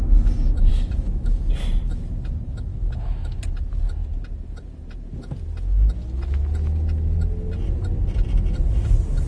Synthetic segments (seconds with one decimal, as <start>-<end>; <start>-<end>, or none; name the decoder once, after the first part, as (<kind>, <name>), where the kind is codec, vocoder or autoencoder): 0.7-1.4 (autoencoder, DAC-VAE); 2.7-3.4